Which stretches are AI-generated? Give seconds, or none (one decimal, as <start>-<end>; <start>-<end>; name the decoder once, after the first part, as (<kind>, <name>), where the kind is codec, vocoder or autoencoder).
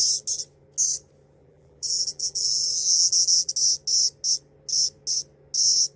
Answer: 1.4-3.5 (vocoder, BigVGAN v2)